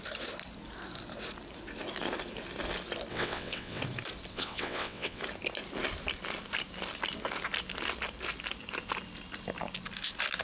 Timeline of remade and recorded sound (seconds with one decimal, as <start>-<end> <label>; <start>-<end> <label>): 0.0-3.1 recorded; 3.1-3.8 remade; 3.8-4.3 recorded; 4.3-5.2 remade; 5.2-10.4 recorded